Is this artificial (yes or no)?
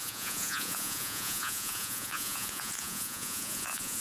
yes